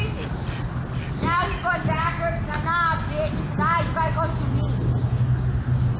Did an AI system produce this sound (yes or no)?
no